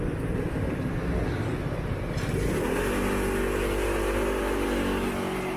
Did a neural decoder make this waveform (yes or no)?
no